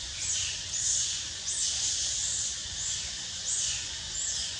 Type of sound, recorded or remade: remade